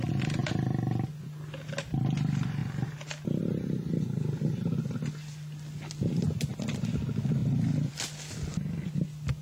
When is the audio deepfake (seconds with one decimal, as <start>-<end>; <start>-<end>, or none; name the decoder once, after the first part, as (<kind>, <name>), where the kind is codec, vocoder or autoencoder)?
none